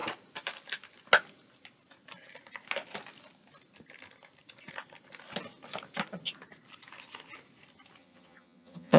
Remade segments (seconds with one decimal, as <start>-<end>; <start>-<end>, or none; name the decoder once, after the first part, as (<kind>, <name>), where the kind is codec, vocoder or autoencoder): 8.0-9.0 (vocoder, HiFi-GAN)